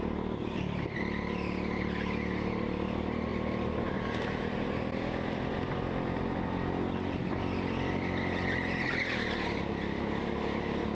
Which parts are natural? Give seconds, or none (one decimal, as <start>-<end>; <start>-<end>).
0.0-10.9